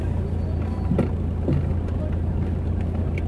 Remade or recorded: recorded